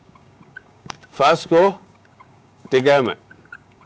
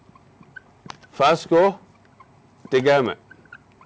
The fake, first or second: first